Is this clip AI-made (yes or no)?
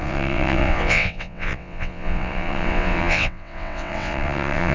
yes